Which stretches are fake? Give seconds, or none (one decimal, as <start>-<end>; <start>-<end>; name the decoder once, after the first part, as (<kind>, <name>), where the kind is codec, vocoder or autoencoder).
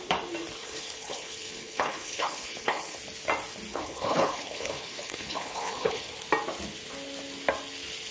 0.6-3.0 (codec, HILCodec); 3.7-6.1